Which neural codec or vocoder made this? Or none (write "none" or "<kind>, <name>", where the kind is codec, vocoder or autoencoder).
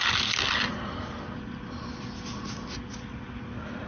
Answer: none